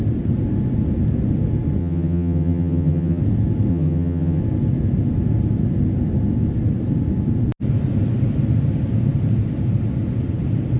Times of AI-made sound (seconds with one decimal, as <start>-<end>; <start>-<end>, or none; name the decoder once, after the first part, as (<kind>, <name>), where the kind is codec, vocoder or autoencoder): 1.8-3.2 (vocoder, HiFi-GAN); 3.7-4.4

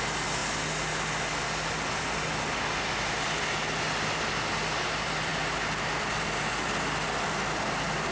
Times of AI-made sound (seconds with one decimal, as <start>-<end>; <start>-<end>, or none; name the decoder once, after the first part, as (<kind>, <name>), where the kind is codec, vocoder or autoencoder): none

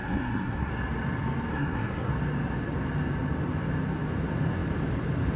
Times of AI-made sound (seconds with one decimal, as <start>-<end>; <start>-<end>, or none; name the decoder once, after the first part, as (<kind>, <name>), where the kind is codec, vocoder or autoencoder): 0.0-0.7 (codec, SNAC); 1.5-2.1

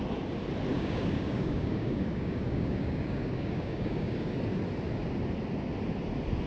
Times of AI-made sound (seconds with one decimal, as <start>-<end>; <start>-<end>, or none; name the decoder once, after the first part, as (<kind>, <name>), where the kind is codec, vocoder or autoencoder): 0.7-4.6 (codec, DAC)

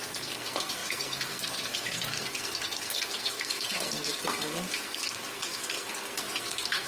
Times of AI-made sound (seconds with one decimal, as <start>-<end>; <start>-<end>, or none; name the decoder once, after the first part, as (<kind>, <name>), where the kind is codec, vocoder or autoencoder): 0.0-6.9 (codec, SNAC)

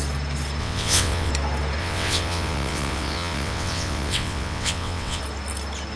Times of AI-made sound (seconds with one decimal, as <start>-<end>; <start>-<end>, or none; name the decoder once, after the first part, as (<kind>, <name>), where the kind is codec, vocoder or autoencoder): 0.6-1.3 (vocoder, WaveNeXt); 1.8-5.2

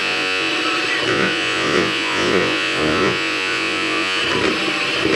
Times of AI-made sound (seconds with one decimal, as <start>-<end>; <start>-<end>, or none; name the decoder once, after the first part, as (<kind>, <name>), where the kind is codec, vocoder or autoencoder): 0.0-0.5 (vocoder, Vocos); 1.1-4.2